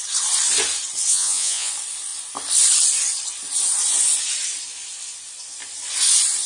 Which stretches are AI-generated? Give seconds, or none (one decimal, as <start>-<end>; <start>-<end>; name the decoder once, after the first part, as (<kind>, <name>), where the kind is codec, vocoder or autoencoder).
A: 1.1-1.7 (vocoder, Vocos)